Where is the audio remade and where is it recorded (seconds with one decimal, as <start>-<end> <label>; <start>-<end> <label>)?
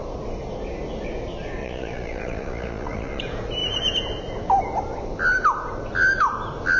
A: 0.0-1.6 recorded; 1.6-3.2 remade; 3.2-6.8 recorded